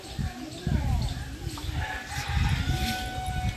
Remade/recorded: recorded